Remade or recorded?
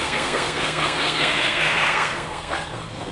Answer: remade